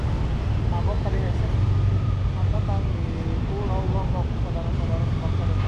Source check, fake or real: real